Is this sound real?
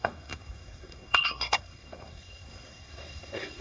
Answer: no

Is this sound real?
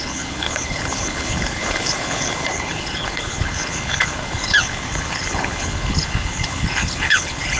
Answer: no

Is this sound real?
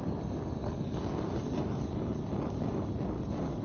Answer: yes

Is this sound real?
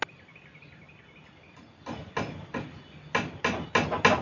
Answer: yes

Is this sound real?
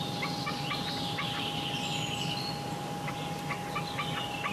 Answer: yes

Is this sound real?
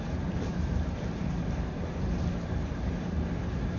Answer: no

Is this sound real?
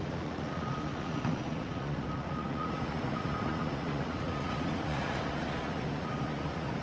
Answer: no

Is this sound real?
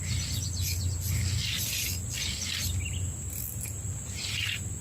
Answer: yes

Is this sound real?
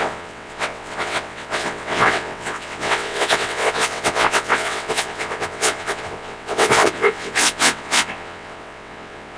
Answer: no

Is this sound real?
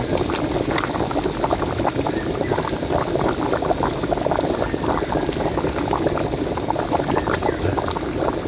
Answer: yes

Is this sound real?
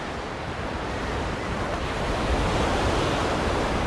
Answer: no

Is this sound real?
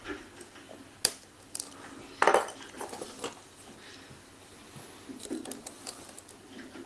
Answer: yes